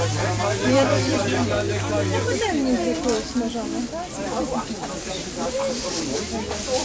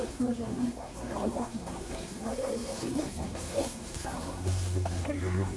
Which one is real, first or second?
first